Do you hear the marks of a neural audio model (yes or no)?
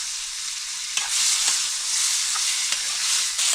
no